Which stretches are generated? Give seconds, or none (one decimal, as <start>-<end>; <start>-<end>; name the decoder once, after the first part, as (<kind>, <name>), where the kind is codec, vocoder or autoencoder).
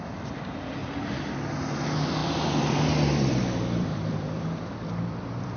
0.0-0.8 (vocoder, BigVGAN v2); 1.7-5.6